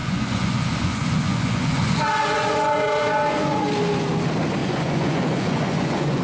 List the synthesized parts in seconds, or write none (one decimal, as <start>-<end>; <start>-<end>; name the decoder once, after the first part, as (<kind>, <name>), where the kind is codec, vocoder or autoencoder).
0.0-3.7 (vocoder, Vocos); 4.6-6.2

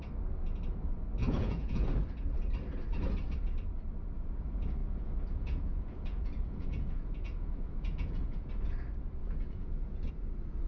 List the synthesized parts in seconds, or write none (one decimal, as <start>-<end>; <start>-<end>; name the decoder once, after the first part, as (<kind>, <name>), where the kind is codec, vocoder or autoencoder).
1.2-1.9 (vocoder, Vocos); 4.8-8.5; 9.2-10.1

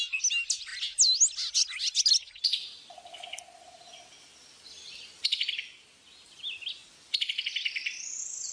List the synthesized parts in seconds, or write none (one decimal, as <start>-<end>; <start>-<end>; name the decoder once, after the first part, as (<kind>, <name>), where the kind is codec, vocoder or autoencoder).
none